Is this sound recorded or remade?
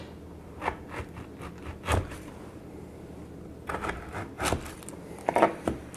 recorded